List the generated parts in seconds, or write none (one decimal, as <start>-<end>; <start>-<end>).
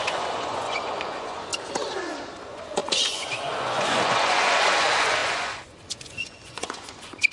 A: 0.0-1.5; 2.4-7.3